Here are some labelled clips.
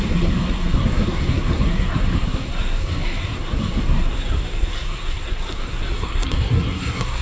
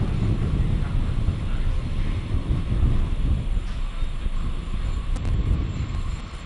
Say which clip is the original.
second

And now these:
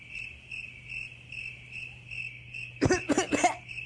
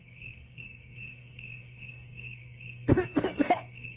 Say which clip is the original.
first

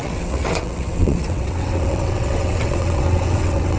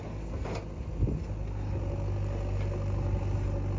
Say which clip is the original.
second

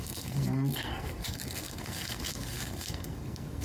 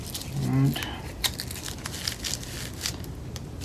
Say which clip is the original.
second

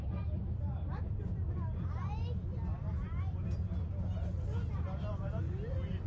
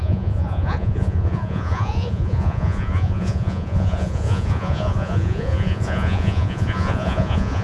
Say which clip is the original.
first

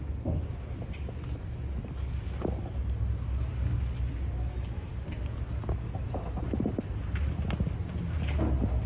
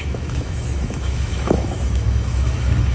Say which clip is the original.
first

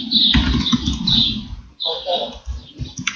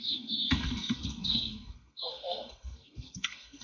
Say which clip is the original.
first